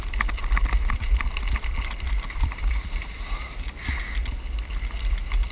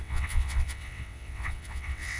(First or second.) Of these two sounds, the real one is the first